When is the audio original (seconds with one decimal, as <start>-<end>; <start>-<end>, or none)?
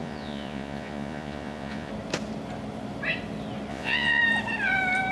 1.9-3.7; 4.2-5.1